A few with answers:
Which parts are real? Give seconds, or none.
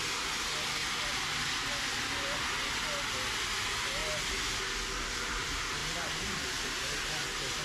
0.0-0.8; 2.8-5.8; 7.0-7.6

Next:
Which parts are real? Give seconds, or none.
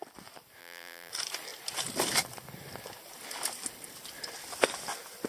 0.0-0.6; 1.1-5.3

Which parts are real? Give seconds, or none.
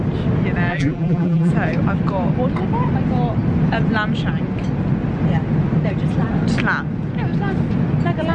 0.0-0.7; 1.5-8.3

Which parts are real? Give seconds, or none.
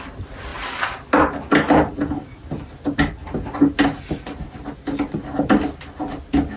0.0-6.6